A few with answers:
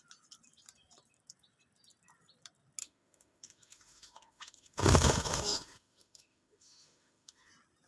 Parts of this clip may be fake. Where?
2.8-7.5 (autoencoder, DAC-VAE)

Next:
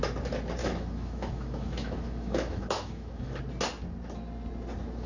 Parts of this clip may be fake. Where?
0.6-3.4 (autoencoder, DAC-VAE)

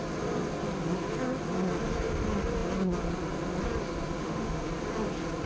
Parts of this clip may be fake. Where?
4.2-4.7 (autoencoder, DAC-VAE)

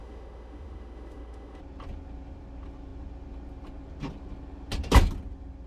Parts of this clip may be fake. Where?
0.0-1.6 (autoencoder, DAC-VAE)